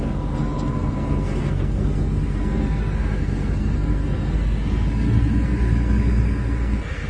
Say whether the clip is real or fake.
fake